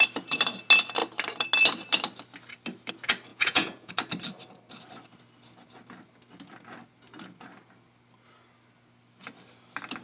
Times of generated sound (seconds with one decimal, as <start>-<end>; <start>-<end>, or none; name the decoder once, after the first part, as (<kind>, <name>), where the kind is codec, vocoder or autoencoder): 3.3-3.9 (vocoder, Vocos)